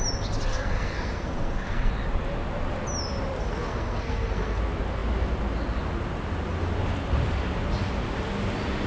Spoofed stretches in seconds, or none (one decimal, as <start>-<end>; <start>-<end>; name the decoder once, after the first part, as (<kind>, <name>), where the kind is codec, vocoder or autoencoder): 0.5-1.9 (codec, SNAC); 3.4-4.6